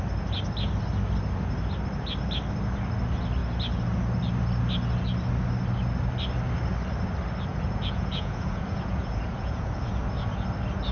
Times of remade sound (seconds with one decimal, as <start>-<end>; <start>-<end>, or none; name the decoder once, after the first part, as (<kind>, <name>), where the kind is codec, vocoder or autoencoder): 7.5-9.7 (vocoder, Vocos)